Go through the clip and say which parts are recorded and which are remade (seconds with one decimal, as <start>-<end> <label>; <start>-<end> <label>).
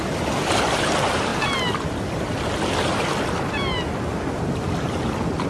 0.0-5.5 recorded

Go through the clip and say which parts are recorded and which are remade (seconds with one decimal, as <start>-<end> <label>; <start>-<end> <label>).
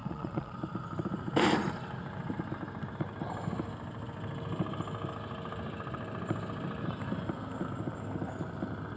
0.0-0.5 remade; 0.5-9.0 recorded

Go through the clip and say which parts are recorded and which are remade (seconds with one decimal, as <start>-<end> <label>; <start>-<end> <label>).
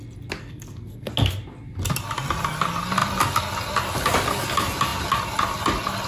0.0-0.4 recorded; 0.4-1.1 remade; 1.1-6.1 recorded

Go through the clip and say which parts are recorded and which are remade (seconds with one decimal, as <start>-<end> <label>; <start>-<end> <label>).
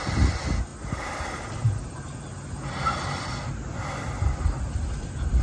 0.0-5.4 recorded